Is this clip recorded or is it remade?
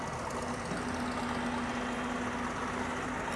recorded